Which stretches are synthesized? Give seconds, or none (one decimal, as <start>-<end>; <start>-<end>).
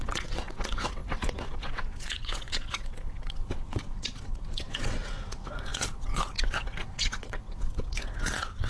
0.0-8.7